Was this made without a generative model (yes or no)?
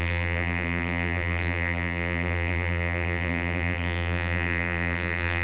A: no